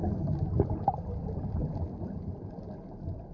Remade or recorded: recorded